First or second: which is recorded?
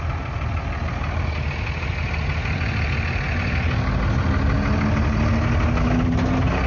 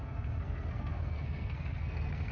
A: first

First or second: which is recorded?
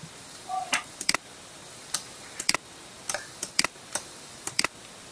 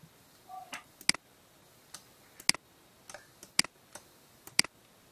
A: second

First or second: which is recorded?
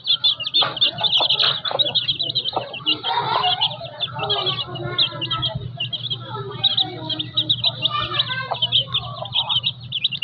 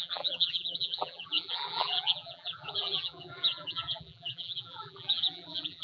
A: first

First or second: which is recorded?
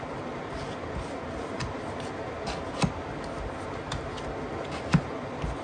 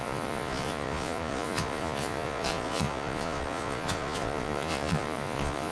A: first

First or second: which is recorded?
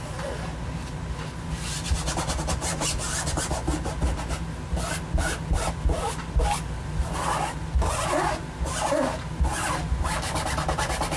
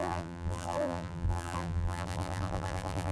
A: first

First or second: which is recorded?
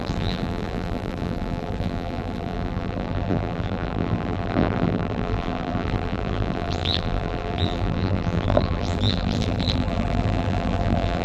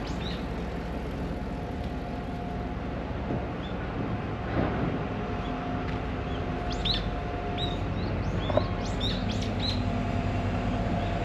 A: second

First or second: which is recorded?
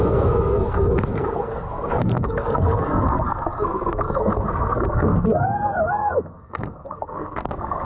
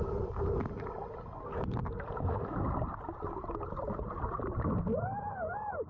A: second